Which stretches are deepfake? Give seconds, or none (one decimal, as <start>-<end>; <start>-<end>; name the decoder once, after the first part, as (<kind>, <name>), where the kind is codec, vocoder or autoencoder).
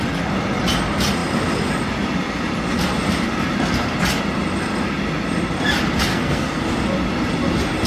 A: 6.1-6.6 (codec, SNAC)